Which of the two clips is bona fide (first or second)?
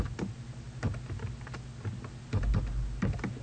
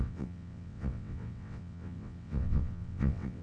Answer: first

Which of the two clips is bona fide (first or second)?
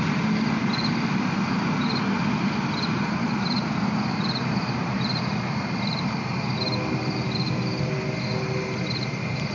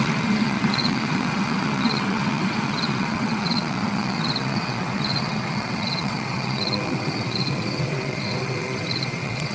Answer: first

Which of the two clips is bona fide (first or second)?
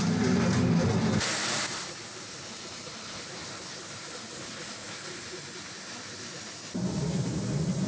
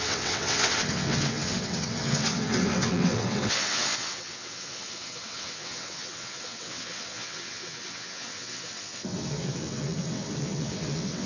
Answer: first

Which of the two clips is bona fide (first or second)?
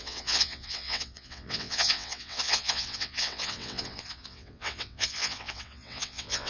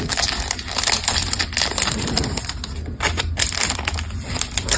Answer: second